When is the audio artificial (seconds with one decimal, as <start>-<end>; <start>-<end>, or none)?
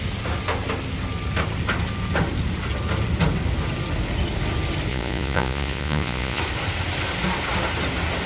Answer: 4.9-6.4